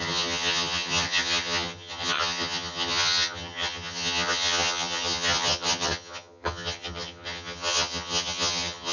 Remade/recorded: remade